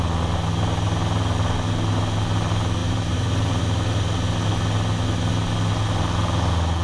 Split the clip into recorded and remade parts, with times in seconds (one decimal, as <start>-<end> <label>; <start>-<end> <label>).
0.0-2.8 recorded; 2.8-3.6 remade; 3.6-6.8 recorded